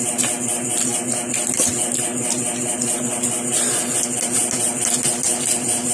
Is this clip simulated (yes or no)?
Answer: no